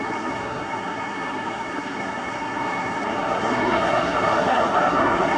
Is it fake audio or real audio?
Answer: fake